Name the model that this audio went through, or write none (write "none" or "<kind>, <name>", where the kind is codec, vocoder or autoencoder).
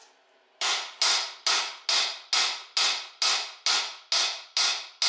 none